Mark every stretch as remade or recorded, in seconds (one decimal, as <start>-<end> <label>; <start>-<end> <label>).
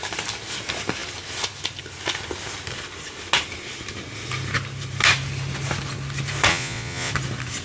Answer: 0.0-6.5 recorded; 6.5-7.1 remade; 7.1-7.6 recorded